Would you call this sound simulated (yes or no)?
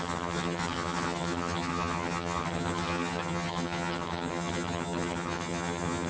yes